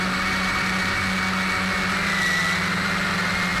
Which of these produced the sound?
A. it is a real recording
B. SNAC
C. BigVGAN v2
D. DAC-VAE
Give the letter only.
A